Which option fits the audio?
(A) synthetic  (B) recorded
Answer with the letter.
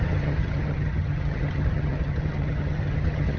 A